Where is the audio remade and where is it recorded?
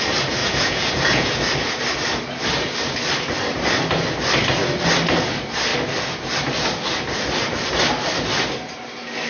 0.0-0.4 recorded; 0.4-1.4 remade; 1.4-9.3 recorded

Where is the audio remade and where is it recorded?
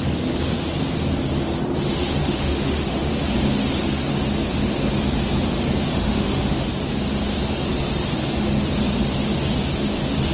0.0-2.2 recorded; 2.2-3.1 remade; 3.1-5.9 recorded; 5.9-6.7 remade; 6.7-10.3 recorded